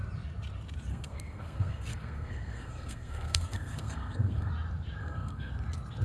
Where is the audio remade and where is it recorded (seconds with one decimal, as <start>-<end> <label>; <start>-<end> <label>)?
0.0-0.9 recorded; 0.9-4.5 remade; 4.5-5.0 recorded; 5.0-5.5 remade; 5.5-6.0 recorded